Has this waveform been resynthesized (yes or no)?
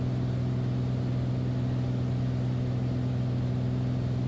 no